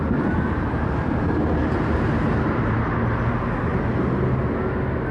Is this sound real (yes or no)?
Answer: yes